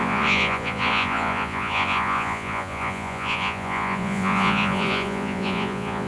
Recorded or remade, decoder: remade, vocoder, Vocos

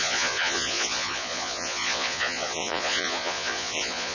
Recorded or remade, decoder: remade, vocoder, Vocos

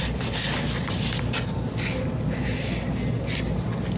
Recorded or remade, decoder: recorded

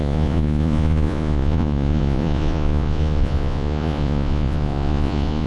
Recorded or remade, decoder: remade, vocoder, Vocos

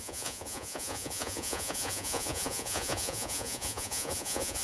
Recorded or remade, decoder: remade, vocoder, Vocos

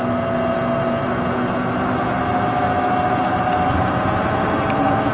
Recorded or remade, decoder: recorded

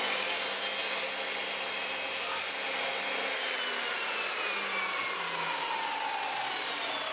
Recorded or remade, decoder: recorded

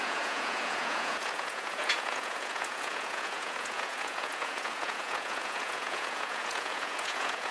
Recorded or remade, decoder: remade, vocoder, Vocos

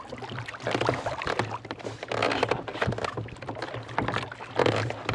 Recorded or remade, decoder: recorded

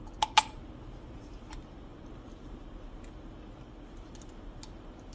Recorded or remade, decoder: recorded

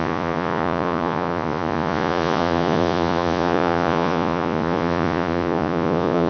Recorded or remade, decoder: remade, vocoder, Vocos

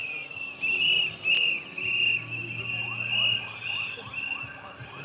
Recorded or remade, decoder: recorded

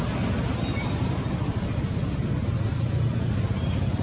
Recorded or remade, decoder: recorded